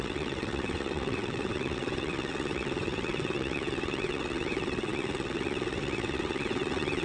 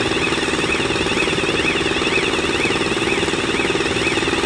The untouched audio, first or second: second